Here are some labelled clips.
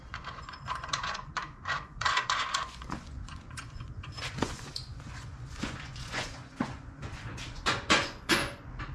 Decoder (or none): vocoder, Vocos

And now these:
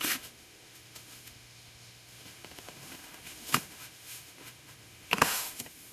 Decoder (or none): autoencoder, DAC-VAE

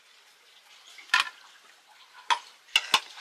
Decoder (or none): none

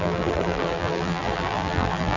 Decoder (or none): vocoder, BigVGAN v2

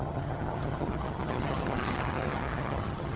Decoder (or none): vocoder, HiFi-GAN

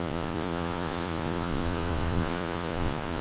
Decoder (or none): vocoder, Vocos